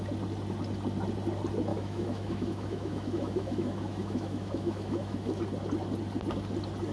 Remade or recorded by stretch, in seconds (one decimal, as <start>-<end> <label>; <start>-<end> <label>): 0.0-1.7 recorded; 1.7-5.4 remade; 5.4-6.9 recorded